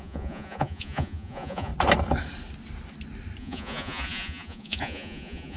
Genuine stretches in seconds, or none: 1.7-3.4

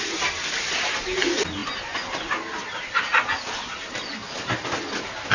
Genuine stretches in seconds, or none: 0.0-5.3

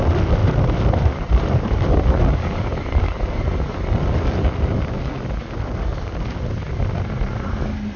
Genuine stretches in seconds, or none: 0.0-0.4; 1.8-8.0

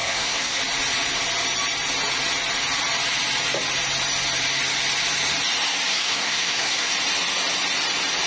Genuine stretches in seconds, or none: 0.6-5.9; 6.9-8.3

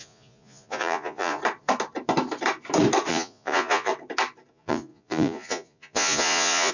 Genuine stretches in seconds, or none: 1.4-3.1; 3.9-4.5